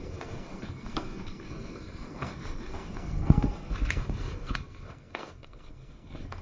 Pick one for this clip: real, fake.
fake